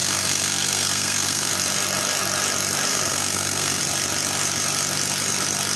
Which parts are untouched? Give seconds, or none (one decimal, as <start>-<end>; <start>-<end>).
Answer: 1.5-2.9; 3.8-5.8